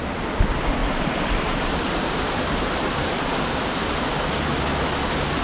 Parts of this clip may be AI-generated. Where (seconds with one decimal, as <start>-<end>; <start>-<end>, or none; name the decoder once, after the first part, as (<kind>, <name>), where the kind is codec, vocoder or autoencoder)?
0.8-4.0 (vocoder, BigVGAN v2)